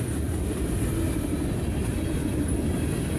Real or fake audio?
real